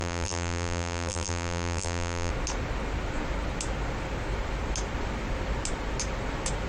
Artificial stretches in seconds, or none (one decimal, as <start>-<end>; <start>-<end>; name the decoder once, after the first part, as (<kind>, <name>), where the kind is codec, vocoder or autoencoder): 0.0-2.3 (vocoder, BigVGAN v2)